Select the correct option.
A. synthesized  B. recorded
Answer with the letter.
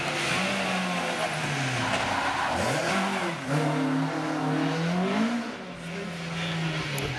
B